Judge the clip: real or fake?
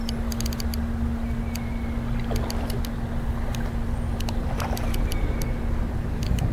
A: real